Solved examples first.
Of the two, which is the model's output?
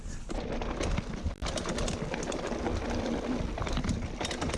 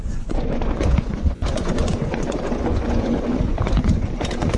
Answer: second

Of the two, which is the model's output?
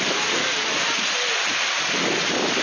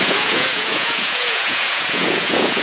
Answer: second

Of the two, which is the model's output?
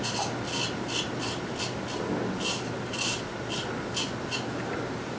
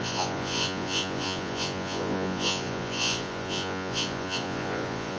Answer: second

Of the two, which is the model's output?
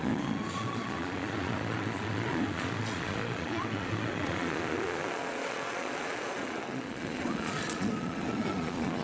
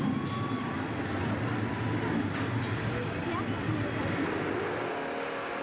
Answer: first